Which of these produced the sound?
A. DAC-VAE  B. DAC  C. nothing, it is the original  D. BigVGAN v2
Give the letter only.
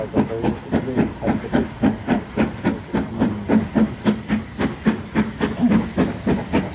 C